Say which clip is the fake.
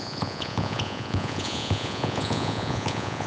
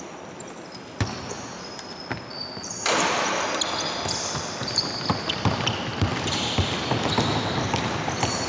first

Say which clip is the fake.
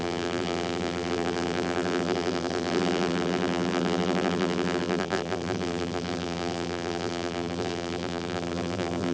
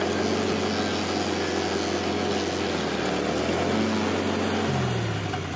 first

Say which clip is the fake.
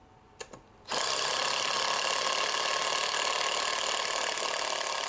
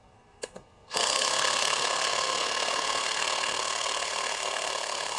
second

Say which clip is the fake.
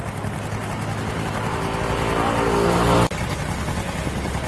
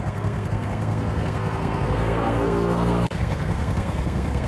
second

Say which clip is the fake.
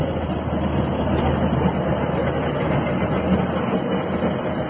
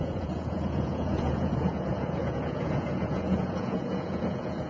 second